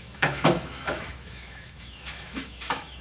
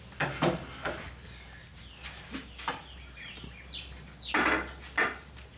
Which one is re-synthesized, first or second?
first